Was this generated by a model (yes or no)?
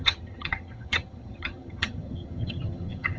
yes